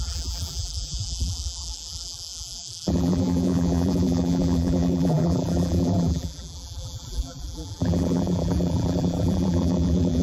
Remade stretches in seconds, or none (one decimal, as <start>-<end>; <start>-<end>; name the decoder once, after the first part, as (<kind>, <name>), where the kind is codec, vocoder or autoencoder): 0.0-10.2 (vocoder, BigVGAN v2)